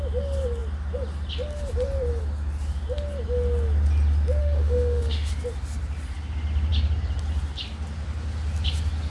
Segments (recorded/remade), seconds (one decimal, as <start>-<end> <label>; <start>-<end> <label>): 0.0-4.4 recorded; 4.4-5.3 remade; 5.3-9.1 recorded